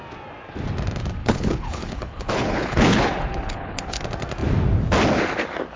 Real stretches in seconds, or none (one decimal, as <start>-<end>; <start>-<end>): 0.0-1.2; 4.0-5.8